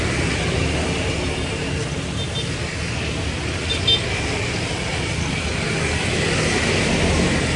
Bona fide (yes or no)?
yes